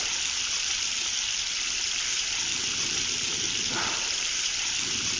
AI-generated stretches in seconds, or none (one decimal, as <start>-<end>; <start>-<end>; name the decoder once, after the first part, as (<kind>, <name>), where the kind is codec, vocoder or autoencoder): none

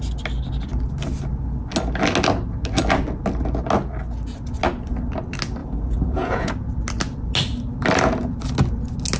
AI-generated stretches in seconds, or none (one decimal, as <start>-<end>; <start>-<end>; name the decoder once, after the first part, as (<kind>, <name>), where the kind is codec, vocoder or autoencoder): 5.6-6.5 (vocoder, Vocos)

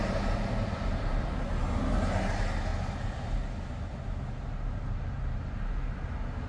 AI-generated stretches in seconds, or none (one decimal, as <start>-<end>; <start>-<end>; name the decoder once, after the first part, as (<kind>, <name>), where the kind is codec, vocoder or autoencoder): none

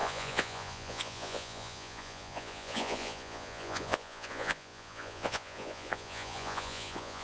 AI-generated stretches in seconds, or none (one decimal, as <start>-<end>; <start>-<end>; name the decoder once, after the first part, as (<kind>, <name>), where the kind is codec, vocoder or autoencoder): 0.0-7.2 (vocoder, Vocos)

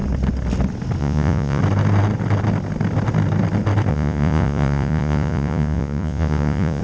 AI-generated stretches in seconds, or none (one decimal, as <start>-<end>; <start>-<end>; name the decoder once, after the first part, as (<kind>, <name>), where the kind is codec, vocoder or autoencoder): 1.0-1.6 (vocoder, Vocos); 3.9-6.8

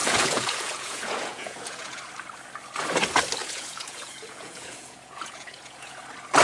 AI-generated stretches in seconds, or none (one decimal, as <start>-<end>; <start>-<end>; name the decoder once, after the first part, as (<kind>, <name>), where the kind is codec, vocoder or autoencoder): 0.0-2.0 (vocoder, Vocos); 3.4-6.0